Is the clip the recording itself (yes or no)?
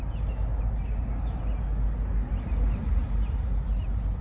yes